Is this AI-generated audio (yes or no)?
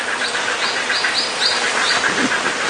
no